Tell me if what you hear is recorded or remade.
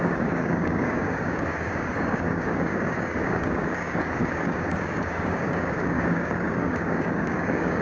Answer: remade